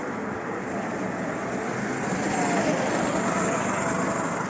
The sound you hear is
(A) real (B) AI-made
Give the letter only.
A